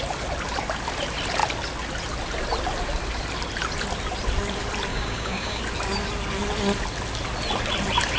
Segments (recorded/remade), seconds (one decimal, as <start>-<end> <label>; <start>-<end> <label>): 0.0-4.9 recorded; 4.9-5.6 remade; 5.6-8.2 recorded